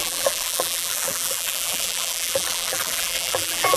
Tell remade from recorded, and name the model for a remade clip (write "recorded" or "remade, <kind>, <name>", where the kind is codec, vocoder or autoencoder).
remade, vocoder, BigVGAN v2